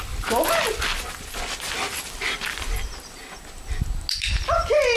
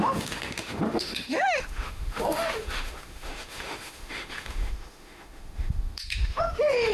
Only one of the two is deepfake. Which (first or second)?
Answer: second